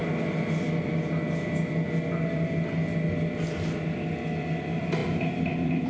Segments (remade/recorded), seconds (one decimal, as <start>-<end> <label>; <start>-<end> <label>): 0.0-5.9 recorded